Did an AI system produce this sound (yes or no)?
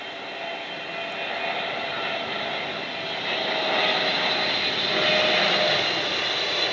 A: no